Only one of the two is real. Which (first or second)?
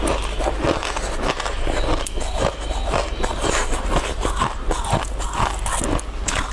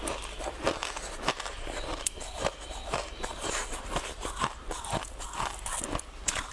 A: first